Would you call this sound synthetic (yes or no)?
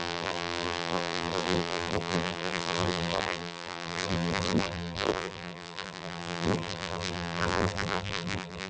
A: yes